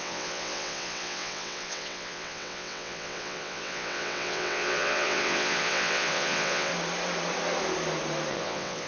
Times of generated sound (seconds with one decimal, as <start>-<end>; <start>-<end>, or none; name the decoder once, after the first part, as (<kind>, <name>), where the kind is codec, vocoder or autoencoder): 0.0-6.7 (vocoder, WaveNeXt); 8.3-8.9